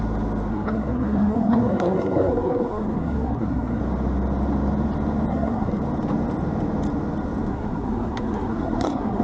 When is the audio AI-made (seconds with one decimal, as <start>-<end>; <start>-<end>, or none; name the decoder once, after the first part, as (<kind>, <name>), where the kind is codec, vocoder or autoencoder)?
0.5-3.8 (codec, SNAC); 5.3-5.8; 7.5-9.2